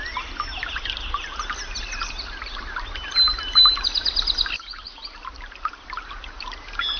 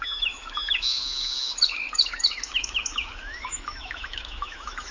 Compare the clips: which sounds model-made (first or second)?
second